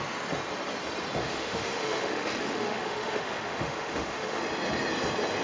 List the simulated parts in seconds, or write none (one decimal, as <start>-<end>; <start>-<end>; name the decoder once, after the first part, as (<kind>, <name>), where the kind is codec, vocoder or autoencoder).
1.2-4.4 (autoencoder, DAC-VAE)